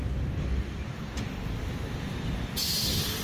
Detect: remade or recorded recorded